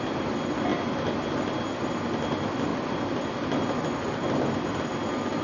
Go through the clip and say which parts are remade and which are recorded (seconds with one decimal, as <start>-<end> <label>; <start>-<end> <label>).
0.0-5.4 recorded